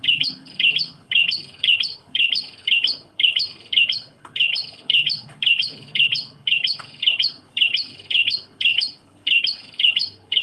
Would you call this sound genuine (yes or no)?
no